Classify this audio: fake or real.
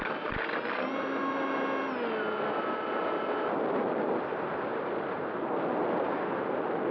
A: real